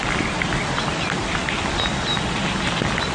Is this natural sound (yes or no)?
yes